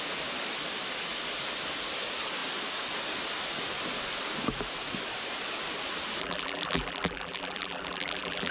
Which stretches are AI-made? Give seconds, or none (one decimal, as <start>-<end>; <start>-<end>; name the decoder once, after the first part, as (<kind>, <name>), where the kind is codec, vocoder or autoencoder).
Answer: 6.2-8.5 (vocoder, BigVGAN v2)

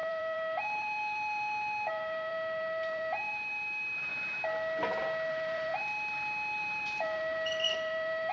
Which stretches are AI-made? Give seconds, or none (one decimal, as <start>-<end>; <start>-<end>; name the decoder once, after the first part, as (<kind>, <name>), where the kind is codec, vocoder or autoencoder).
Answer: 0.0-4.1 (vocoder, BigVGAN v2); 5.3-5.7; 6.6-8.3

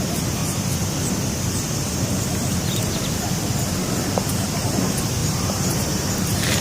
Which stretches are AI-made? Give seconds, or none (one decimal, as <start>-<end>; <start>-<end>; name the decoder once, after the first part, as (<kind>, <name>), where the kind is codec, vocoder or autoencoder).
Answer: 5.2-6.1 (vocoder, BigVGAN v2)

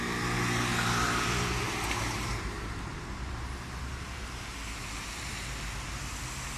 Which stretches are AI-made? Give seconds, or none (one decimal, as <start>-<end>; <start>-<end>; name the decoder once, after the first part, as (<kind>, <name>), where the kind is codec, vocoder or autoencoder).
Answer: 0.7-3.8 (vocoder, BigVGAN v2); 4.8-6.0

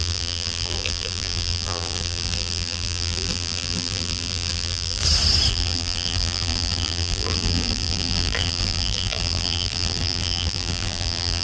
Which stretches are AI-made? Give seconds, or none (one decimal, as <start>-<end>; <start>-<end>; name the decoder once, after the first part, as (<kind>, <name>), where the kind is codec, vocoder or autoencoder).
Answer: 0.0-5.0 (vocoder, BigVGAN v2); 5.5-11.4

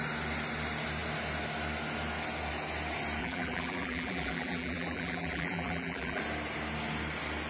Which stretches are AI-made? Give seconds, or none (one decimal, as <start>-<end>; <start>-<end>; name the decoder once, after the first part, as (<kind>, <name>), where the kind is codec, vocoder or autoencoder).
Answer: 3.2-6.2 (vocoder, BigVGAN v2)

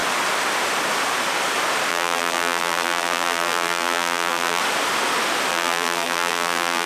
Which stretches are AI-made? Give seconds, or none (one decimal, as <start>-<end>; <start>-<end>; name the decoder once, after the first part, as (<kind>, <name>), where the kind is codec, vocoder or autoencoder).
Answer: 1.9-4.6 (vocoder, BigVGAN v2); 5.5-6.9

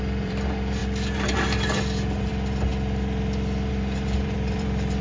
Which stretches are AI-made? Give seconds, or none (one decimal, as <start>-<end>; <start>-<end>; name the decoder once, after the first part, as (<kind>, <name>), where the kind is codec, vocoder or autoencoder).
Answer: 0.0-0.8 (vocoder, BigVGAN v2); 2.3-2.7; 3.7-5.0